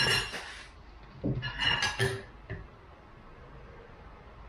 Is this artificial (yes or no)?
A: no